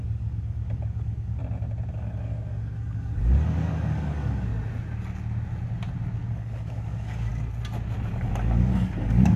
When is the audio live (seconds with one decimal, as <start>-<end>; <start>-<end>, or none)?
1.4-1.9; 4.5-6.3; 7.3-8.1